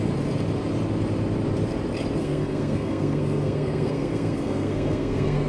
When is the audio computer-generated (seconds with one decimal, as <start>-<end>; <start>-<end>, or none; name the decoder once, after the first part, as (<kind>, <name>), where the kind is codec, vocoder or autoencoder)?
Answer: 2.2-5.5 (codec, SNAC)